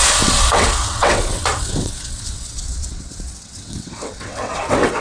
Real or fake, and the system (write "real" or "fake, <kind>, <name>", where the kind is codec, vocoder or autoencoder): fake, vocoder, WaveNeXt